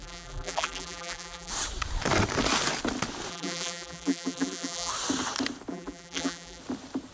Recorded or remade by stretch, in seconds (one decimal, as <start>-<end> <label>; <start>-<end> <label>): 0.0-1.5 remade; 1.5-3.3 recorded; 3.3-4.9 remade; 4.9-5.7 recorded; 5.7-6.6 remade; 6.6-7.1 recorded